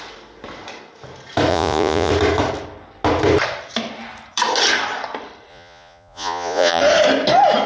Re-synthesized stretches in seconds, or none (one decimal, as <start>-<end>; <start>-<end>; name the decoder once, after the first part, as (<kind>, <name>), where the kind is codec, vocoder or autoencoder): 1.5-2.1 (vocoder, Vocos); 5.5-6.8